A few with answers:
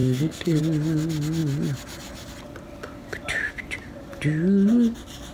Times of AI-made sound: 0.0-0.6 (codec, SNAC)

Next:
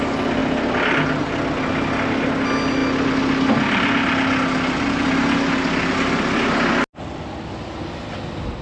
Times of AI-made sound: none

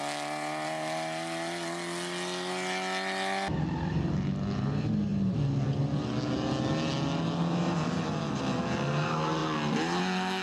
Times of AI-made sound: none

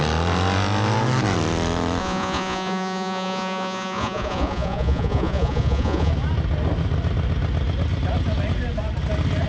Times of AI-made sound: 2.0-6.1 (vocoder, Vocos)

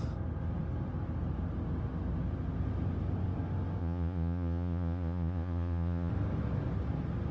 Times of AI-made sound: 3.8-6.1 (vocoder, Vocos)

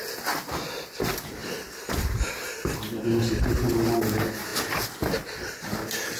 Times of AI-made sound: none

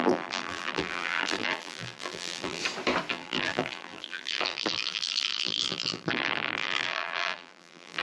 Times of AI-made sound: 0.0-2.6 (vocoder, BigVGAN v2); 3.1-8.0